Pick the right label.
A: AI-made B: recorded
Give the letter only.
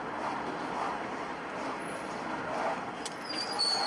B